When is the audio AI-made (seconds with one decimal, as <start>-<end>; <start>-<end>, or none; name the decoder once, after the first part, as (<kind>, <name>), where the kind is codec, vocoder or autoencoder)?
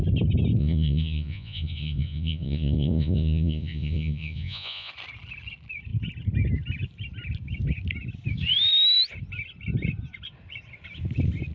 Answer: 0.6-4.9 (vocoder, Vocos)